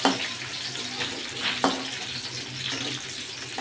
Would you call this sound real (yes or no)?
yes